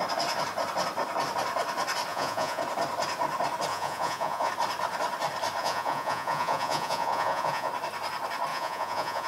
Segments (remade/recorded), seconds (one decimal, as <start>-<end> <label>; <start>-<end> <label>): 0.0-2.1 recorded; 2.1-2.6 remade; 2.6-3.7 recorded; 3.7-4.5 remade; 4.5-5.6 recorded; 5.6-7.7 remade; 7.7-8.5 recorded; 8.5-9.3 remade